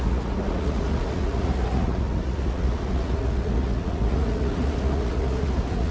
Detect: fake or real fake